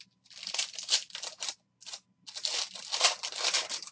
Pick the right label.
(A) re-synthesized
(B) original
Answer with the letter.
B